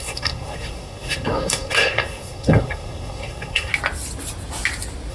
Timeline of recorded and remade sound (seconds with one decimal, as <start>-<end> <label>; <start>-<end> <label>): 0.0-3.7 remade; 3.7-5.1 recorded